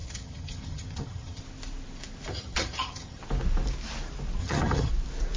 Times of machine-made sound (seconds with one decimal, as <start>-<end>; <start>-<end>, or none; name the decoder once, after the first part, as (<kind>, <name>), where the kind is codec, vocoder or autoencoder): 0.0-1.4 (vocoder, HiFi-GAN); 2.3-3.2; 4.4-4.9